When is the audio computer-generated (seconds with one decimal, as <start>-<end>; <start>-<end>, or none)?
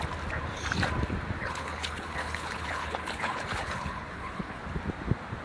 1.4-4.6